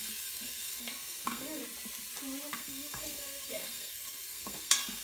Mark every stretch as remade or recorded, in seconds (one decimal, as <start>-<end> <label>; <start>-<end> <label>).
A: 0.0-1.6 remade; 1.6-2.5 recorded; 2.5-5.0 remade